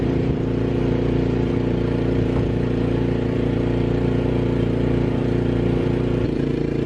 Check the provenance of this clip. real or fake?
fake